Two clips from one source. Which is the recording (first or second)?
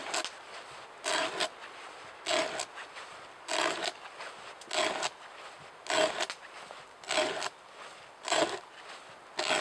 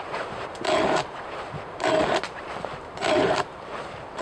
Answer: first